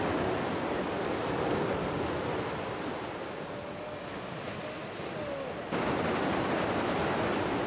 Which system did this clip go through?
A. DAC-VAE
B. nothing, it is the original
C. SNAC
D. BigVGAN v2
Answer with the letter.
B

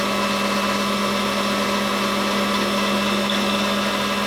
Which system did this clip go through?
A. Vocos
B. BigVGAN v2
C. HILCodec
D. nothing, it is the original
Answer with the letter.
D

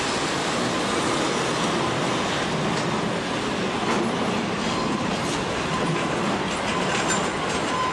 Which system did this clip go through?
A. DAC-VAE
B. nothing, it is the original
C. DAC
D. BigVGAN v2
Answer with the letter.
B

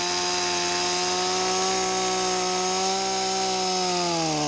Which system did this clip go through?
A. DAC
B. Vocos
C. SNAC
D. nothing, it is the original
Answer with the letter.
D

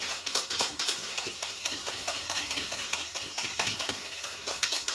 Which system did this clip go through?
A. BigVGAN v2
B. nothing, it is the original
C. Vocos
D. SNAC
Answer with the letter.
D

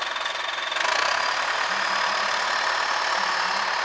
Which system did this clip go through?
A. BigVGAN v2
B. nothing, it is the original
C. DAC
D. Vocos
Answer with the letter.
B